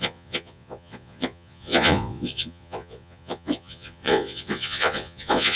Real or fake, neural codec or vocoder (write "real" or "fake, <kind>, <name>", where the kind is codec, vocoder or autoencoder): fake, vocoder, Vocos